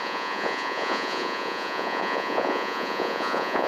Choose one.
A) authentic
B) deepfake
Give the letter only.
B